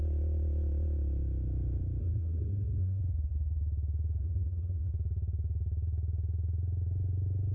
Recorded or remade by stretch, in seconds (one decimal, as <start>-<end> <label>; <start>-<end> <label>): 0.0-2.0 recorded; 2.0-3.0 remade; 3.0-4.2 recorded; 4.2-4.9 remade; 4.9-7.5 recorded

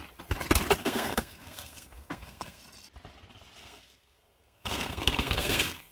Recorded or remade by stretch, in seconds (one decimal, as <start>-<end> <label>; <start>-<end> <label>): 0.0-0.8 recorded; 0.8-2.6 remade; 2.6-3.6 recorded; 3.6-5.9 remade

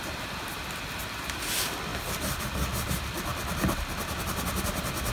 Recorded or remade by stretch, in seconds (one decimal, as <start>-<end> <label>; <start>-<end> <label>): 0.0-5.1 recorded

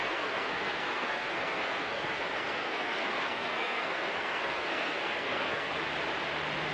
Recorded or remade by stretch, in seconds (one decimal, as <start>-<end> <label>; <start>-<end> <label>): 0.0-5.7 remade; 5.7-6.7 recorded

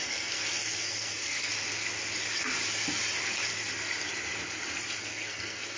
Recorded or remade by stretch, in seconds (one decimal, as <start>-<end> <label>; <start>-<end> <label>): 0.0-1.5 remade; 1.5-5.0 recorded; 5.0-5.8 remade

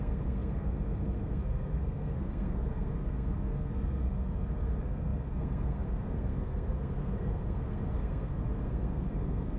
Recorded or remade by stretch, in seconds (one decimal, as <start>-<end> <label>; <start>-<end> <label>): 0.0-9.6 remade

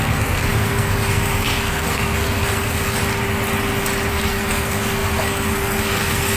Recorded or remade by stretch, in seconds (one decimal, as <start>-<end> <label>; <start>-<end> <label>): 0.0-3.0 remade; 3.0-4.1 recorded; 4.1-6.4 remade